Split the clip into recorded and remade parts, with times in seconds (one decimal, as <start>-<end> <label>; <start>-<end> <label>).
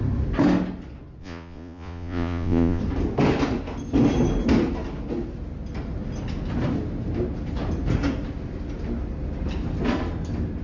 0.0-1.2 recorded; 1.2-2.8 remade; 2.8-10.6 recorded